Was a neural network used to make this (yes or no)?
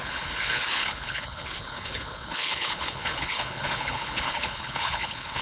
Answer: yes